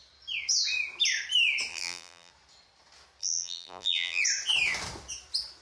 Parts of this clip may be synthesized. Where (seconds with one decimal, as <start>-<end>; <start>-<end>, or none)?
1.7-2.3; 3.2-4.2